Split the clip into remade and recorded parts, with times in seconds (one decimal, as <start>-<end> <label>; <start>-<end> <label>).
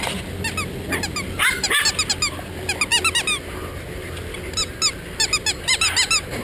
0.0-6.4 recorded